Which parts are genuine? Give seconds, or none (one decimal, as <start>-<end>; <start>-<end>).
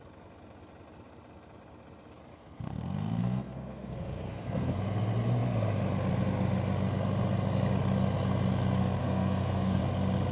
0.0-2.3; 4.8-9.0; 9.8-10.3